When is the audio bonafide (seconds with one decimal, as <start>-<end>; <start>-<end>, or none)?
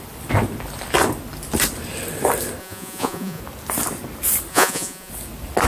0.0-2.6; 3.4-4.5; 5.1-5.7